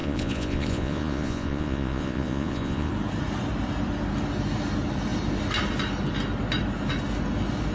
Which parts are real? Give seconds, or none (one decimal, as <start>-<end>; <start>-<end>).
2.9-7.7

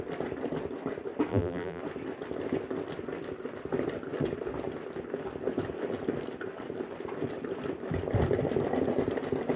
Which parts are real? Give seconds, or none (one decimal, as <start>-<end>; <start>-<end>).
0.0-1.3; 1.8-9.6